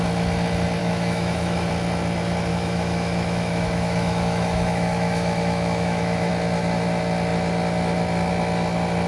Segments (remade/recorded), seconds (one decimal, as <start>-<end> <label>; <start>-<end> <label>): 0.0-0.8 recorded; 0.8-1.7 remade; 1.7-2.5 recorded; 2.5-6.3 remade; 6.3-9.1 recorded